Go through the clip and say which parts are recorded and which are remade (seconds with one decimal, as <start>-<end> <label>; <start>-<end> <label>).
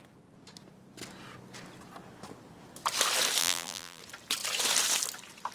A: 0.0-3.4 recorded; 3.4-4.0 remade; 4.0-5.5 recorded